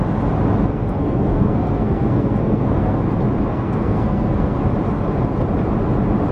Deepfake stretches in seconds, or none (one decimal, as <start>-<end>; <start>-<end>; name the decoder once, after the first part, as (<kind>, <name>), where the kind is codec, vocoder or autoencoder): 0.7-3.0 (codec, SNAC); 3.5-4.7